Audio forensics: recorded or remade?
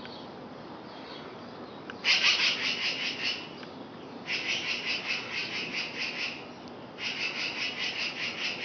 recorded